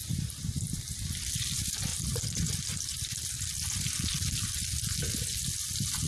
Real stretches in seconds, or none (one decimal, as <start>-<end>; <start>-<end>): 0.0-0.7